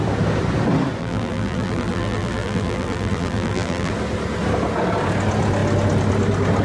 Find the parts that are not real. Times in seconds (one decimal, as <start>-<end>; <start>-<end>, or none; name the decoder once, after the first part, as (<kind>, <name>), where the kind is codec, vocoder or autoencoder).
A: 1.0-3.9 (vocoder, BigVGAN v2)